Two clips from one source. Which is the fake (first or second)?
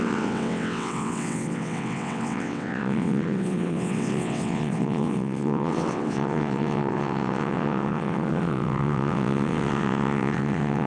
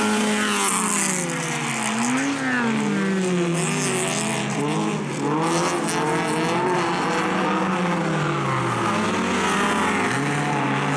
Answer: first